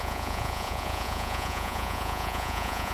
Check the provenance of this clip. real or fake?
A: fake